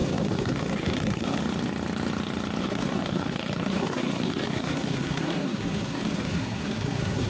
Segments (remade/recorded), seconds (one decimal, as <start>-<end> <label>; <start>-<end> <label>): 0.0-1.4 remade; 1.4-2.6 recorded; 2.6-7.3 remade